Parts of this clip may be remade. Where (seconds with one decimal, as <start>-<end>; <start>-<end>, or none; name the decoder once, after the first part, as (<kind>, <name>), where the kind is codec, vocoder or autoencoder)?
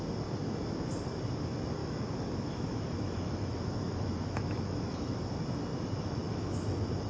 1.8-5.3 (autoencoder, DAC-VAE); 5.7-7.1